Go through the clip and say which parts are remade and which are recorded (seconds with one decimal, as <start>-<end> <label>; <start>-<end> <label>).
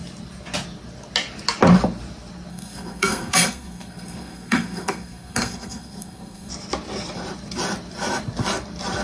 0.0-2.5 recorded; 2.5-6.5 remade; 6.5-9.0 recorded